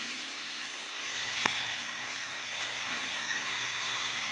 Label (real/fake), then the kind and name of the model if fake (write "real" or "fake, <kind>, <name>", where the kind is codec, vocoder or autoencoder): fake, codec, SNAC